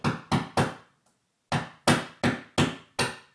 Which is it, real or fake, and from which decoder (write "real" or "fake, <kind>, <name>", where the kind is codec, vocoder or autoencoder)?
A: real